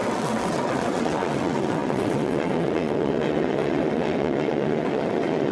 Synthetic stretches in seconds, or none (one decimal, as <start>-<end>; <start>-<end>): 0.0-5.5